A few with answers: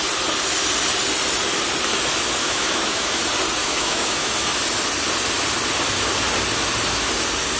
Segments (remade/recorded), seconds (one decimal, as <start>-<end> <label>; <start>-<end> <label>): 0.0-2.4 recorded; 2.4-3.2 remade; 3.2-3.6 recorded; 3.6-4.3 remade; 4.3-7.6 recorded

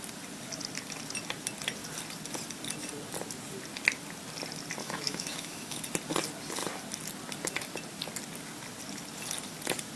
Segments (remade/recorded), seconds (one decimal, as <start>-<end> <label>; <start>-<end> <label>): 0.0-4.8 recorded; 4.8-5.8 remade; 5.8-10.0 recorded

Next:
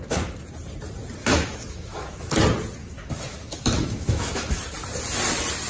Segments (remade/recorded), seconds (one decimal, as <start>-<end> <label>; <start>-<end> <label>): 0.0-1.2 recorded; 1.2-2.3 remade; 2.3-2.8 recorded; 2.8-4.6 remade; 4.6-5.7 recorded

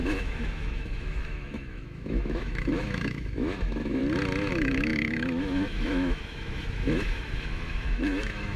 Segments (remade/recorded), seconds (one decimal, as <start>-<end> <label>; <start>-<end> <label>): 0.0-4.0 remade; 4.0-4.5 recorded; 4.5-8.6 remade

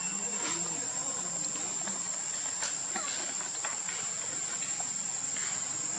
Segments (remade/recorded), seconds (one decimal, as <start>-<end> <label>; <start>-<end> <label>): 0.0-6.0 recorded

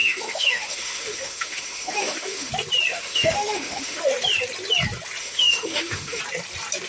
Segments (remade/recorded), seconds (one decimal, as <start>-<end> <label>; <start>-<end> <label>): 0.0-2.5 remade; 2.5-2.9 recorded; 2.9-4.0 remade; 4.0-5.2 recorded; 5.2-6.2 remade; 6.2-6.9 recorded

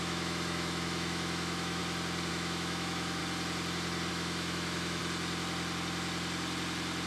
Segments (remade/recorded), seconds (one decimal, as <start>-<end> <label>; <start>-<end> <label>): 0.0-1.8 remade; 1.8-2.3 recorded; 2.3-3.2 remade; 3.2-4.1 recorded; 4.1-5.0 remade; 5.0-7.1 recorded